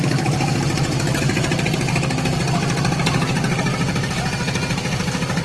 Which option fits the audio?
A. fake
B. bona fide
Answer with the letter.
B